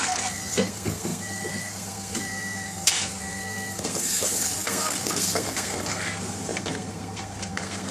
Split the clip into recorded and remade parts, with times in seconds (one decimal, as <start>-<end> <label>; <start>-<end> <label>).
0.0-7.9 remade